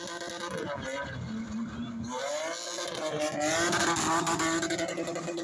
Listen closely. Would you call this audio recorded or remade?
recorded